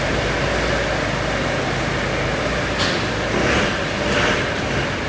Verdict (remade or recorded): recorded